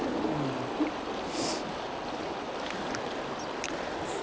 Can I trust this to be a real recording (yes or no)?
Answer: yes